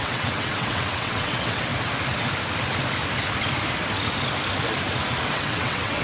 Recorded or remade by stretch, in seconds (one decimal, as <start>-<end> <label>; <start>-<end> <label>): 0.0-1.7 remade; 1.7-5.3 recorded; 5.3-6.0 remade